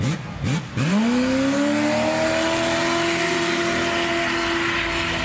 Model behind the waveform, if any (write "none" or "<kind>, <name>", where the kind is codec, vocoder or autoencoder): none